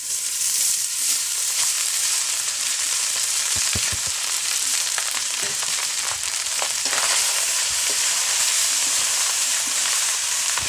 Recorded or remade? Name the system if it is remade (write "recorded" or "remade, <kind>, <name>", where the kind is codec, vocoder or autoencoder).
remade, vocoder, BigVGAN v2